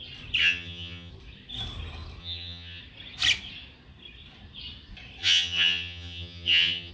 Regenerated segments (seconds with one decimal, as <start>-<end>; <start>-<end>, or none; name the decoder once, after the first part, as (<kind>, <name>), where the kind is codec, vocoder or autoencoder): 0.4-1.1 (vocoder, HiFi-GAN); 2.2-2.8; 5.2-6.9